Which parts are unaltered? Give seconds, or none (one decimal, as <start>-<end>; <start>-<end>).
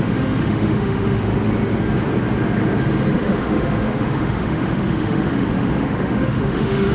1.3-3.1